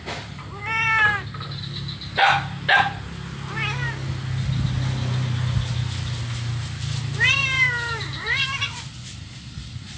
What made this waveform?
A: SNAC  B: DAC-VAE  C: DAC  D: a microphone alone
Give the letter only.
D